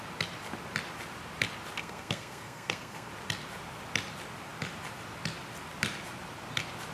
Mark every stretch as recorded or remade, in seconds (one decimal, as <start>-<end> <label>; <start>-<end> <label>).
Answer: 0.0-1.8 recorded; 1.8-3.1 remade; 3.1-6.9 recorded